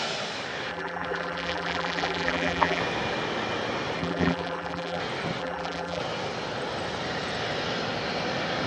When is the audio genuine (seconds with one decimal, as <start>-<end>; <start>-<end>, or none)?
0.0-0.7; 2.8-4.0; 5.0-5.4; 6.0-8.7